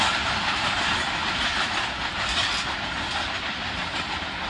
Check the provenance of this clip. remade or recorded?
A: recorded